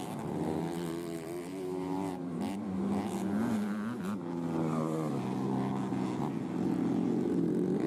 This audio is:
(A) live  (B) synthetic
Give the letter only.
A